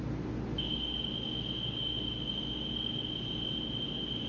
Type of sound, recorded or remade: recorded